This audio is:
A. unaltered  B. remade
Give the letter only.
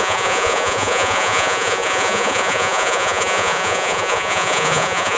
B